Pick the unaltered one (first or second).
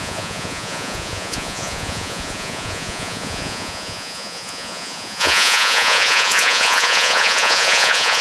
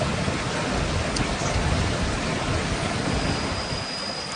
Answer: second